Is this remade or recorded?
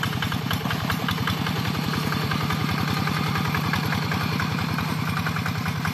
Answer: recorded